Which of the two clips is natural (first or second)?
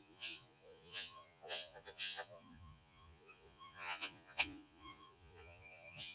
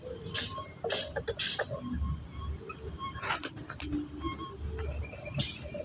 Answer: second